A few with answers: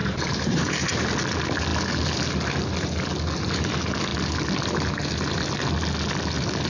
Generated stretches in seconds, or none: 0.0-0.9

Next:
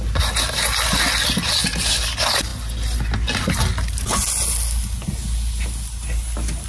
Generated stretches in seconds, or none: none

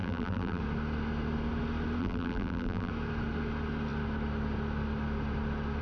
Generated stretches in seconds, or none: 0.0-0.6; 2.0-2.9